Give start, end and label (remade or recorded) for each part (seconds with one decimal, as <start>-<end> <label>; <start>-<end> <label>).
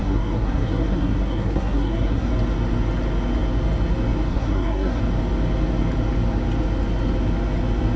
0.0-2.3 remade; 2.3-4.3 recorded; 4.3-5.0 remade; 5.0-8.0 recorded